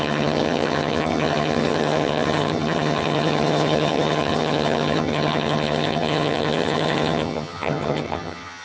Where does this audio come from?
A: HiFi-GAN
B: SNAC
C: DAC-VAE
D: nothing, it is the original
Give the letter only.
A